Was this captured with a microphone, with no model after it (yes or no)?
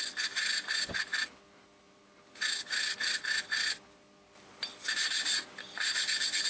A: yes